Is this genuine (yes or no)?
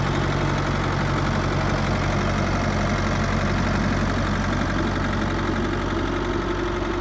yes